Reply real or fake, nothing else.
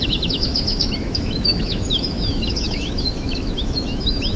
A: fake